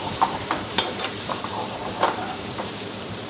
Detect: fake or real fake